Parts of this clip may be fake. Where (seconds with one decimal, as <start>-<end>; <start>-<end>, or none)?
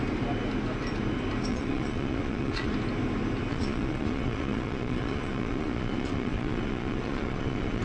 1.5-2.7; 3.5-7.8